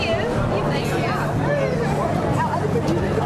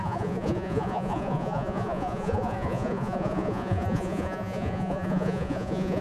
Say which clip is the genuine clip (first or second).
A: first